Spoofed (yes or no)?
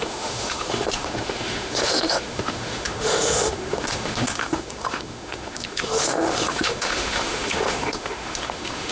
yes